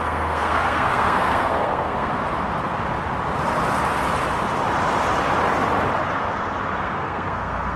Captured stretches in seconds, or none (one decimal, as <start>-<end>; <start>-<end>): 2.1-6.8